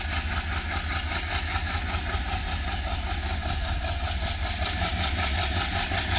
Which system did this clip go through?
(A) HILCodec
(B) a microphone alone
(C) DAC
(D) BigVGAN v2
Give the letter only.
B